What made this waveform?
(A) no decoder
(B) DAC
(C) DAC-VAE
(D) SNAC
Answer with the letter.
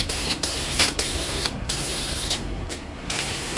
D